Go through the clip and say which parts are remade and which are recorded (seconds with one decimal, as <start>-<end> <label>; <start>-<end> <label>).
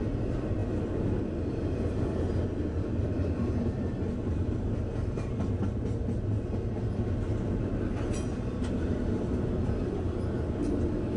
0.0-11.2 recorded